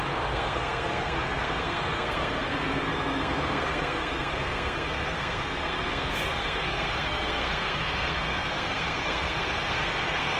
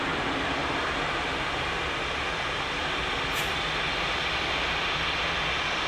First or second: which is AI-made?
first